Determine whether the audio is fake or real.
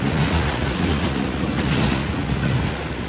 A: fake